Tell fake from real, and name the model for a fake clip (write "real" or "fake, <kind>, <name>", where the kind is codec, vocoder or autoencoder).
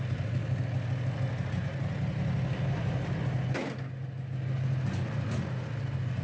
real